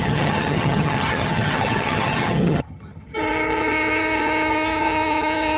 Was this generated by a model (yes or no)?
yes